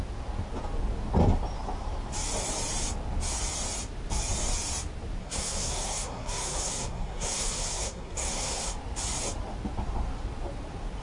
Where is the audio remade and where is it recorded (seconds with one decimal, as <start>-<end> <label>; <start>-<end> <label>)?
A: 0.0-5.2 recorded; 5.2-8.7 remade; 8.7-11.0 recorded